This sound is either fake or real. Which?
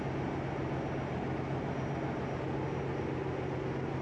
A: real